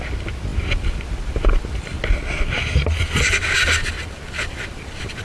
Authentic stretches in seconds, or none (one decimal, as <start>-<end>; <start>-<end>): 0.0-5.2